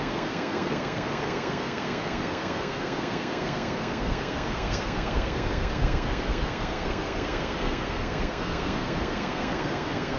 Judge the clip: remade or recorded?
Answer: remade